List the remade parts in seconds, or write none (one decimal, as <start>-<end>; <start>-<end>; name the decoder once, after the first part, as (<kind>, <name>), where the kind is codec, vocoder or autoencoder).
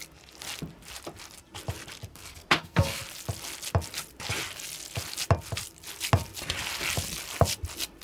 2.1-3.0 (codec, SNAC)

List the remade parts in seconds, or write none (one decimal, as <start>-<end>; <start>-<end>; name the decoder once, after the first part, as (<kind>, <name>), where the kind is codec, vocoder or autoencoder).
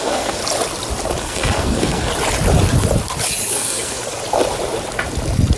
0.0-0.4 (codec, SNAC); 1.2-2.1; 3.5-4.0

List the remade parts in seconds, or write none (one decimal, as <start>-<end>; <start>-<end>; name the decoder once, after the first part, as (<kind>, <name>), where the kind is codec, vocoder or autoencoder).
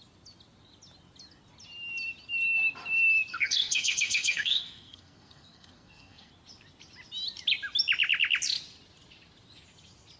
3.3-6.3 (codec, SNAC)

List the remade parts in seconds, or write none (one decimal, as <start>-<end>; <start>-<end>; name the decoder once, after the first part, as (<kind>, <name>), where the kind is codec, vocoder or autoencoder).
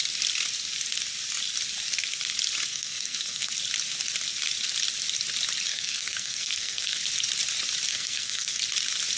2.7-3.5 (codec, SNAC); 5.7-7.0; 7.9-8.6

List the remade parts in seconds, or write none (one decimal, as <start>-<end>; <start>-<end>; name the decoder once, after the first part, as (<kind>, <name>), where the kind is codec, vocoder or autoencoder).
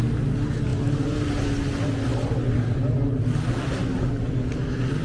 none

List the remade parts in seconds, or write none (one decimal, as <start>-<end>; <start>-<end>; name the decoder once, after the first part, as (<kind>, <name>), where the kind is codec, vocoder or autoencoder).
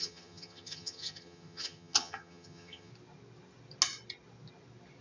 0.0-2.9 (vocoder, HiFi-GAN)